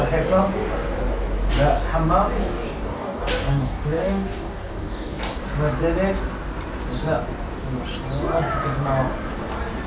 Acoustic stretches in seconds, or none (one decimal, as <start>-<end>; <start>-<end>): 0.0-2.4; 5.2-9.9